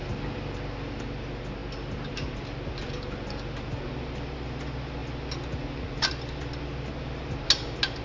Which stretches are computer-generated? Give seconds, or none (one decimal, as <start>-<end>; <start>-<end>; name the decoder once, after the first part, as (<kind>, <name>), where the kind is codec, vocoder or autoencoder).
none